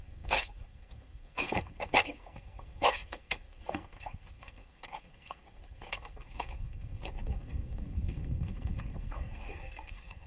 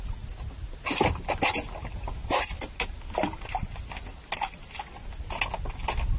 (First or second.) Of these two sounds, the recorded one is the second